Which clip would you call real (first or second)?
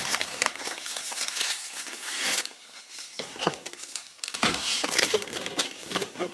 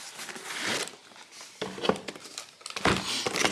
second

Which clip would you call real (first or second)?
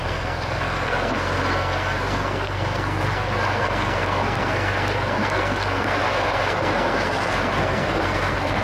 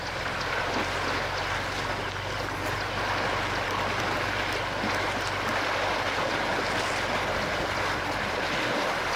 second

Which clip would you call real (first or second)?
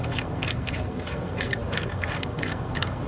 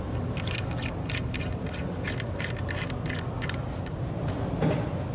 second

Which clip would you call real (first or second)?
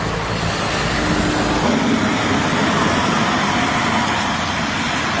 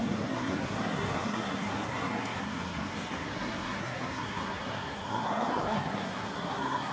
first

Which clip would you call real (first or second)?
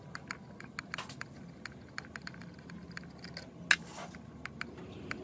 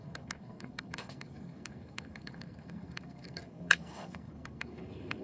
first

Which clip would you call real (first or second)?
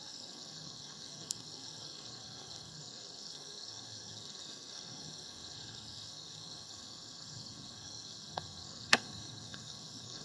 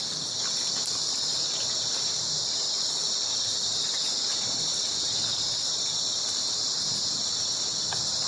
second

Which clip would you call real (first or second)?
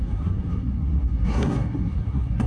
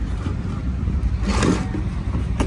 second